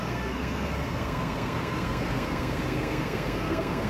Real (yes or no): no